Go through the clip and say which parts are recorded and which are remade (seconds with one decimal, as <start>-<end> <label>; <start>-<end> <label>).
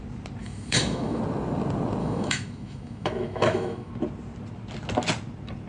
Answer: 0.0-0.4 recorded; 0.4-1.2 remade; 1.2-2.0 recorded; 2.0-3.9 remade; 3.9-5.7 recorded